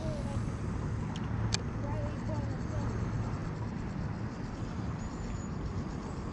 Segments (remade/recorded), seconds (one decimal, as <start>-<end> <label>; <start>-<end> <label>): 0.0-6.3 recorded